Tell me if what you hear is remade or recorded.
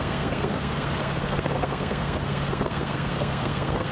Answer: remade